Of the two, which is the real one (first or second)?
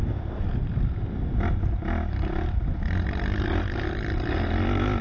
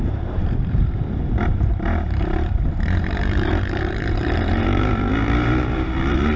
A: first